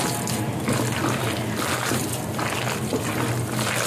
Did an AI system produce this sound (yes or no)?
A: no